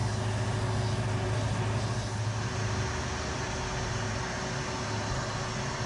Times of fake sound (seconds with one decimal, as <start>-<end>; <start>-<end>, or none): none